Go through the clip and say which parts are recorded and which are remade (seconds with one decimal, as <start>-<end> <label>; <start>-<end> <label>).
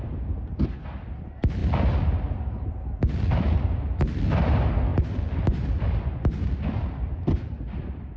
0.0-8.2 recorded